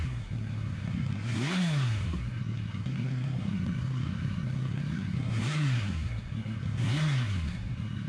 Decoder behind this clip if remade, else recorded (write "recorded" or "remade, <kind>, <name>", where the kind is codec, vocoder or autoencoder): remade, codec, SNAC